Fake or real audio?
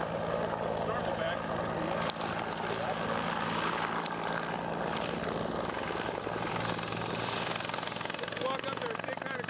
real